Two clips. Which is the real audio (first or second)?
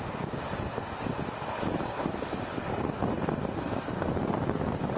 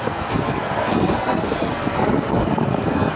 first